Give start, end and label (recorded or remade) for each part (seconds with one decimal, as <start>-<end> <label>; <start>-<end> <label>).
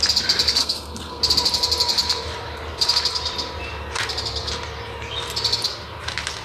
0.0-0.6 recorded; 0.6-1.2 remade; 1.2-6.4 recorded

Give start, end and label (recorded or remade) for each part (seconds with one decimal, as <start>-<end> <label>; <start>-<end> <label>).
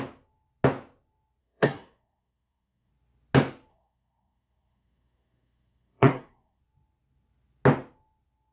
0.0-1.4 recorded; 1.4-2.9 remade; 2.9-3.7 recorded; 3.7-6.6 remade; 6.6-8.5 recorded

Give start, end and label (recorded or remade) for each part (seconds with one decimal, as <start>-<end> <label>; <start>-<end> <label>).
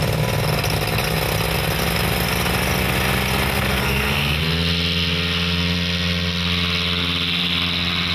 0.0-3.5 recorded; 3.5-4.4 remade; 4.4-8.1 recorded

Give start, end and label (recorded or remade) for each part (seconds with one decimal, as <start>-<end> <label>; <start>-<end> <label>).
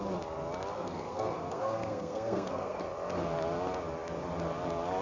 0.0-0.7 recorded; 0.7-2.8 remade; 2.8-5.0 recorded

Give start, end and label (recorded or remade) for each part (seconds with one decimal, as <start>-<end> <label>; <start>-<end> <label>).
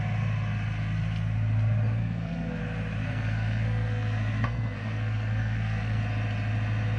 0.0-2.0 recorded; 2.0-2.6 remade; 2.6-3.0 recorded; 3.0-6.0 remade; 6.0-7.0 recorded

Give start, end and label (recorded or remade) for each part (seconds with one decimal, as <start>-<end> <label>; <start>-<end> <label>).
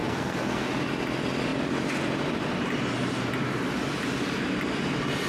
0.0-0.7 remade; 0.7-5.3 recorded